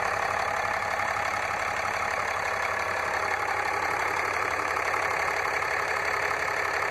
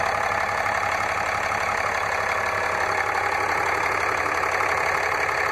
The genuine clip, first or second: second